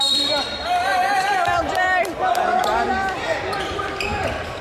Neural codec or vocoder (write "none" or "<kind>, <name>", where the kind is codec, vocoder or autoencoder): vocoder, BigVGAN v2